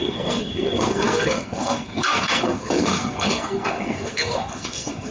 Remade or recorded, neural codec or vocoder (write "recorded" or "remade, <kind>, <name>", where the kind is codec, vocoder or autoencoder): remade, codec, SNAC